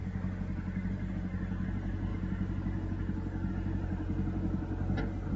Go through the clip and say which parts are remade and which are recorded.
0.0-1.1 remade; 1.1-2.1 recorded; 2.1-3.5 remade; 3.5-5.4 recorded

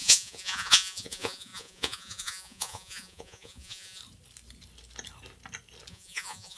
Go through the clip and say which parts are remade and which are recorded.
0.0-4.0 remade; 4.0-5.9 recorded; 5.9-6.6 remade

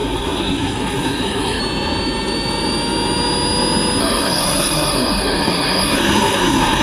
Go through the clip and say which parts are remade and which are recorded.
0.0-1.6 remade; 1.6-4.0 recorded; 4.0-6.8 remade

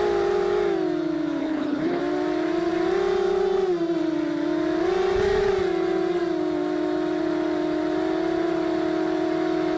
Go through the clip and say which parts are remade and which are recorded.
0.0-1.4 recorded; 1.4-2.0 remade; 2.0-9.8 recorded

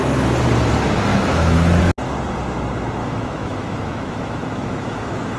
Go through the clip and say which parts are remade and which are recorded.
0.0-1.1 recorded; 1.1-1.8 remade; 1.8-3.0 recorded; 3.0-5.4 remade

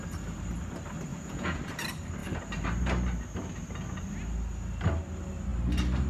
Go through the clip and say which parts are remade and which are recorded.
0.0-1.1 recorded; 1.1-1.6 remade; 1.6-6.1 recorded

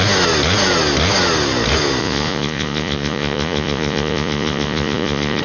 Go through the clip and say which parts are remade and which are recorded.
0.0-2.0 recorded; 2.0-5.4 remade